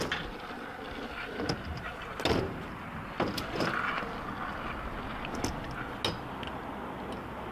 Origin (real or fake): real